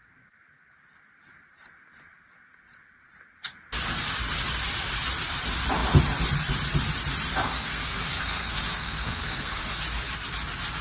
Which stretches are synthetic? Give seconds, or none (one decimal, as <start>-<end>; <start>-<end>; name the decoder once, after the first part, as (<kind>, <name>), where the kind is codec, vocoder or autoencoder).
7.4-9.6 (codec, SNAC)